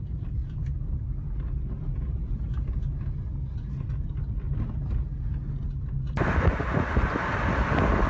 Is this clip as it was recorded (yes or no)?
yes